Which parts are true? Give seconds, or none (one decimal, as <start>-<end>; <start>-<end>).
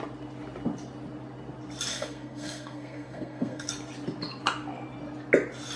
0.0-1.9; 3.7-5.8